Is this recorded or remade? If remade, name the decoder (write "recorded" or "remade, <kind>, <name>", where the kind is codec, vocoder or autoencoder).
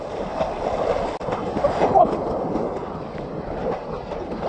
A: recorded